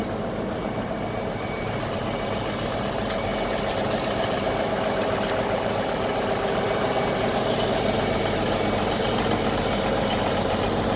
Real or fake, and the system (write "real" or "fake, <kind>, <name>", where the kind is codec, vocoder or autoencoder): fake, vocoder, BigVGAN v2